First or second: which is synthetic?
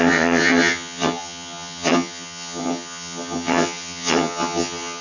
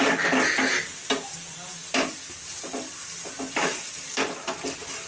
first